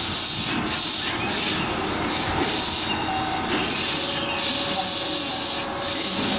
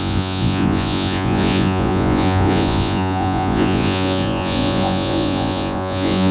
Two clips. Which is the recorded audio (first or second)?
first